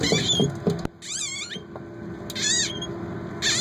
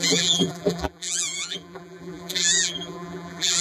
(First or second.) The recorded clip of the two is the first